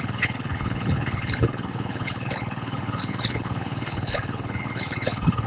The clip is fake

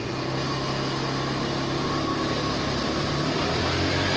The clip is real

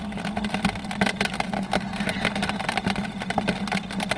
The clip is real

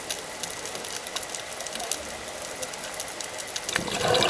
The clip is real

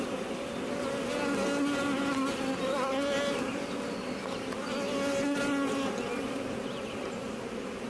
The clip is real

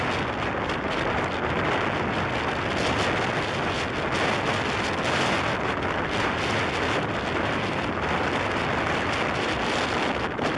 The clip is real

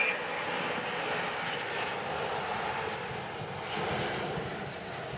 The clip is real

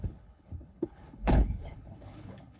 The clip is fake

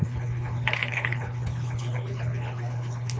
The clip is fake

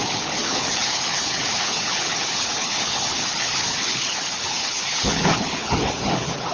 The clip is fake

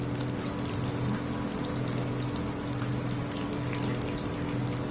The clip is real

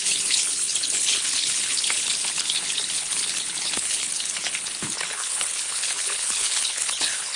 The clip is fake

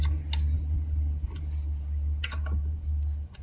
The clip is real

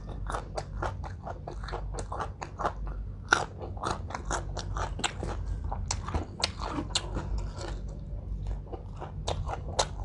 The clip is real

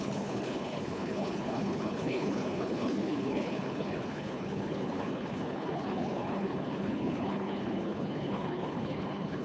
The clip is fake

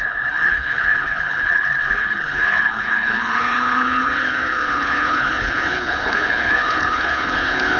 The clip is fake